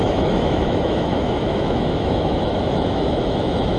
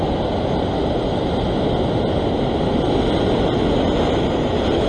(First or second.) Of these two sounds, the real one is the second